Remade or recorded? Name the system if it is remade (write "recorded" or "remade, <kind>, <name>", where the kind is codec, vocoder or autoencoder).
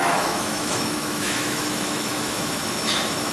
remade, autoencoder, DAC-VAE